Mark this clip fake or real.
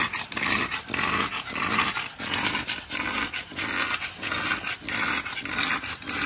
real